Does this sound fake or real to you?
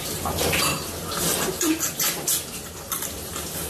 real